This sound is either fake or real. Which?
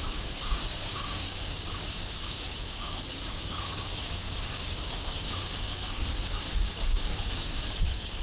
fake